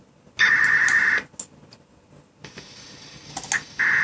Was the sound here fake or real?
real